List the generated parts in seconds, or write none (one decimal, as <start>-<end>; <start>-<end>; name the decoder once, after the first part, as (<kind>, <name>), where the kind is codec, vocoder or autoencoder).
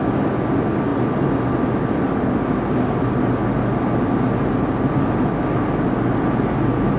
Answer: none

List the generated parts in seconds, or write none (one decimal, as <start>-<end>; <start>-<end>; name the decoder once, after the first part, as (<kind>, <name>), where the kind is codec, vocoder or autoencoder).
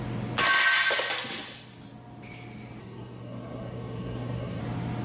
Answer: 2.8-4.6 (codec, SNAC)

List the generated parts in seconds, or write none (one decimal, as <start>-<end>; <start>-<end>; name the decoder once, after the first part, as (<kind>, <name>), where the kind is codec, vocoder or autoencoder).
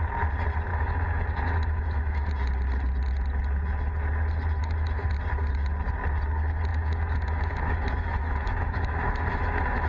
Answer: 0.7-2.3 (autoencoder, DAC-VAE); 4.6-5.1; 6.7-9.9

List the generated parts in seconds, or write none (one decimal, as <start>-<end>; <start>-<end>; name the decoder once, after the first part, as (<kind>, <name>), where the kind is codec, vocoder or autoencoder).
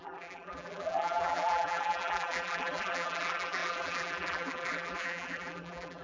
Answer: 0.0-6.0 (vocoder, BigVGAN v2)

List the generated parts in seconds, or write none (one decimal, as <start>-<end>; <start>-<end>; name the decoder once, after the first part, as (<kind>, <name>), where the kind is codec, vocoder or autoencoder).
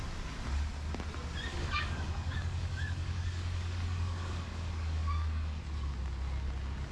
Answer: 1.5-5.6 (codec, DAC)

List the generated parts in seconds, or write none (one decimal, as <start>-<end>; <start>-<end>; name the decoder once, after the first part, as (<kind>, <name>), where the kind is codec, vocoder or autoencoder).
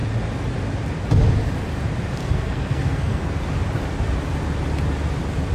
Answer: 2.2-3.2 (codec, SNAC)